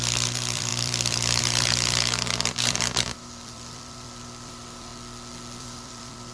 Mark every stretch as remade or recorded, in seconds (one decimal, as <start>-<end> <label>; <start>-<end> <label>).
0.0-4.9 remade; 4.9-5.6 recorded; 5.6-6.3 remade